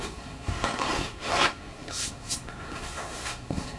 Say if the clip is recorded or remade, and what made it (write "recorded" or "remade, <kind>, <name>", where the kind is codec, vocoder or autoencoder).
remade, codec, SNAC